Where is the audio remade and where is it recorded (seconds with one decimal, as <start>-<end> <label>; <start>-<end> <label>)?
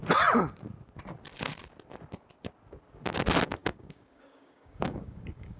0.0-3.6 recorded; 3.6-5.6 remade